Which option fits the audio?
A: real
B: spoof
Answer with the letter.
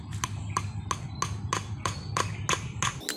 A